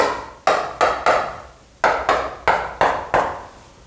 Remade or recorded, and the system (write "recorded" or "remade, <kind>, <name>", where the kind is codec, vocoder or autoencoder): recorded